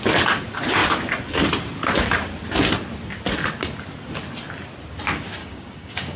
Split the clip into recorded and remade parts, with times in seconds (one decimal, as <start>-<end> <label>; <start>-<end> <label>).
0.0-5.4 recorded; 5.4-6.2 remade